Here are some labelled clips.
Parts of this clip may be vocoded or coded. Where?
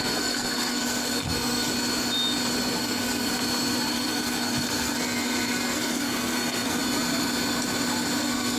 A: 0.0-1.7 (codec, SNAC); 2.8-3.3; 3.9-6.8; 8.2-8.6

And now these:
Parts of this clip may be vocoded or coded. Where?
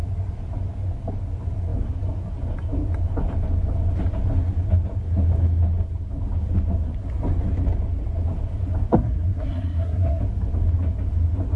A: 8.9-10.2 (codec, SNAC)